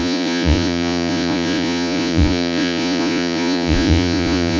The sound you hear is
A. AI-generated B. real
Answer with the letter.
A